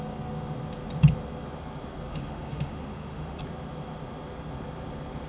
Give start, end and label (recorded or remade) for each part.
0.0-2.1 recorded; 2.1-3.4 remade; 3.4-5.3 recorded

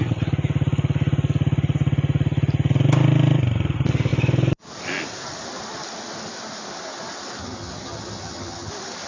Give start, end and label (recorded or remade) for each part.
0.0-7.4 recorded; 7.4-8.7 remade; 8.7-9.1 recorded

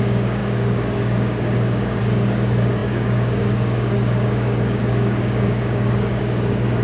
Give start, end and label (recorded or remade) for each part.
0.0-6.8 remade

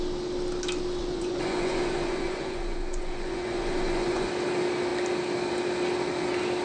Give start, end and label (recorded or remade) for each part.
0.0-1.0 recorded; 1.0-4.3 remade; 4.3-6.6 recorded

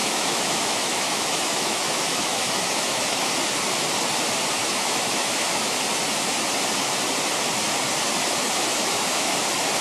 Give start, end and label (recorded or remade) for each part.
0.0-3.3 remade; 3.3-4.6 recorded; 4.6-5.8 remade; 5.8-8.7 recorded; 8.7-9.3 remade; 9.3-9.8 recorded

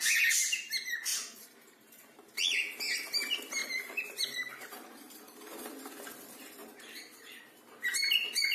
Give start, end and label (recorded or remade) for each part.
0.0-1.1 recorded; 1.1-2.4 remade; 2.4-3.6 recorded; 3.6-5.9 remade; 5.9-6.6 recorded; 6.6-7.4 remade; 7.4-8.5 recorded

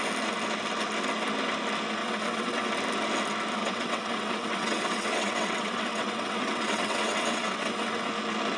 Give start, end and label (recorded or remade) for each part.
0.0-2.0 recorded; 2.0-2.7 remade; 2.7-3.6 recorded; 3.6-8.1 remade; 8.1-8.6 recorded